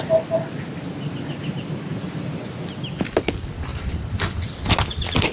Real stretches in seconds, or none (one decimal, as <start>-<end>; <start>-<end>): 0.0-3.7; 4.3-5.3